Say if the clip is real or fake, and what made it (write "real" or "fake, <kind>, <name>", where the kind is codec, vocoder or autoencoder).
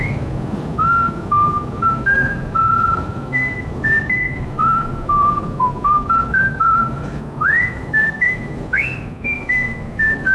real